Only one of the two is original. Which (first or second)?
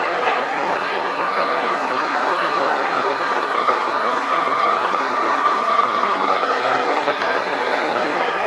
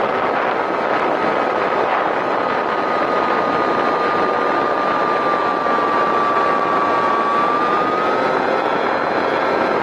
second